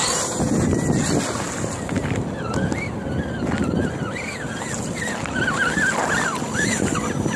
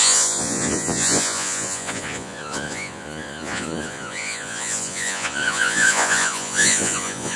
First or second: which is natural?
first